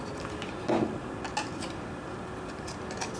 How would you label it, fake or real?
real